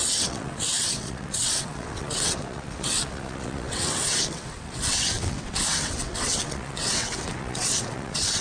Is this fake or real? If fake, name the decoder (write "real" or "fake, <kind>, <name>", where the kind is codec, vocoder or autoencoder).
fake, vocoder, WaveNeXt